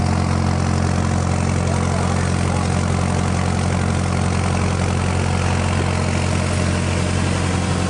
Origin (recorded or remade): recorded